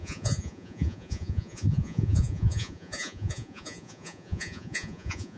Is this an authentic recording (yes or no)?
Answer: no